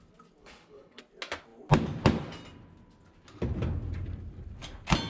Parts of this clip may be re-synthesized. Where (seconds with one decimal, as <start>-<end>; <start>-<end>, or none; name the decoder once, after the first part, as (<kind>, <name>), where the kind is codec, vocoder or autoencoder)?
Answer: 0.4-1.0 (codec, HILCodec)